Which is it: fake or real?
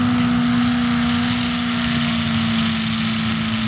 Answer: real